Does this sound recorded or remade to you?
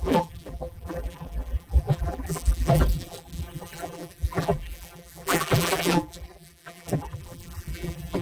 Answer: remade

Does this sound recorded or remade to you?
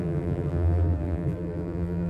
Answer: remade